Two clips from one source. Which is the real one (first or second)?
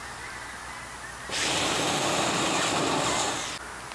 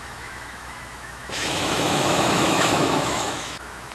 first